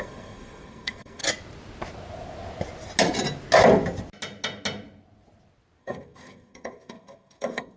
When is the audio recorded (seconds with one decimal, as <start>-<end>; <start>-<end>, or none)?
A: 1.2-5.8